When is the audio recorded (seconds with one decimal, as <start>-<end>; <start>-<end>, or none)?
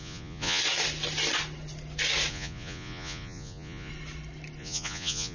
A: 0.6-2.3; 3.9-4.6